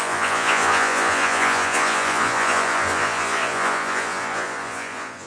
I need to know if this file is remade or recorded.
remade